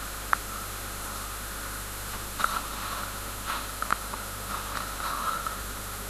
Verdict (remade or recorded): remade